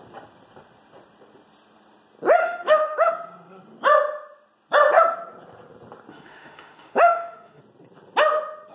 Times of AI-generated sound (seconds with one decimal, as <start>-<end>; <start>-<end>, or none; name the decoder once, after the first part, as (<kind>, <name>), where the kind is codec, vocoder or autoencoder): 2.4-3.1 (autoencoder, DAC-VAE); 6.1-7.6